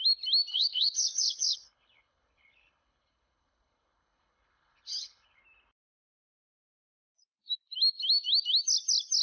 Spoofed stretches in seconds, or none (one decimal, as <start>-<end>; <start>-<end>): 0.5-5.4